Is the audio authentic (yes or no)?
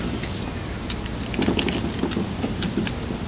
yes